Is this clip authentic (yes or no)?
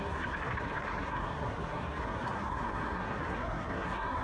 no